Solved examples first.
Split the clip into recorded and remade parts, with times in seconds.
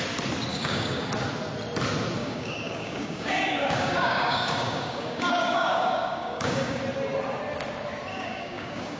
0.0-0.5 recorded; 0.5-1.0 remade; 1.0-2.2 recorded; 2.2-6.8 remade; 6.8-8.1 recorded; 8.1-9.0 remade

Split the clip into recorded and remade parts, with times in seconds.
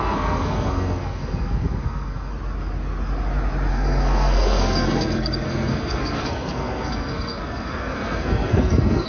0.0-2.3 remade; 2.3-3.7 recorded; 3.7-9.1 remade